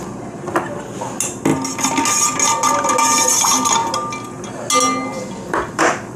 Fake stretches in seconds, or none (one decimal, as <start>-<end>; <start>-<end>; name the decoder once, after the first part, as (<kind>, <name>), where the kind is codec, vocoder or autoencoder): none